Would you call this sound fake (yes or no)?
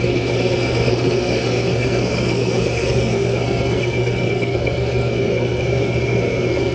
yes